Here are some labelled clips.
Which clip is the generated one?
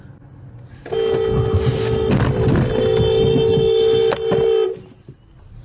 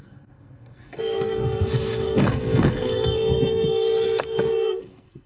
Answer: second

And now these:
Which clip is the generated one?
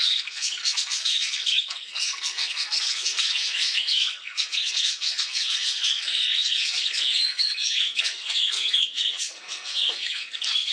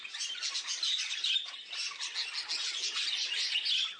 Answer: first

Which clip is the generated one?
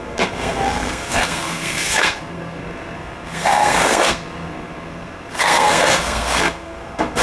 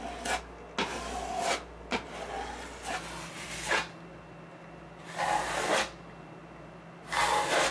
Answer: first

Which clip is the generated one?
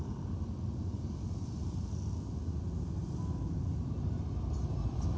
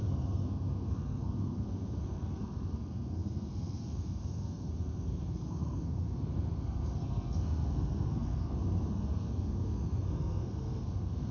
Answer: second